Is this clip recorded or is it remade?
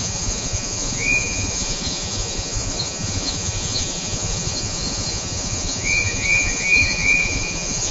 remade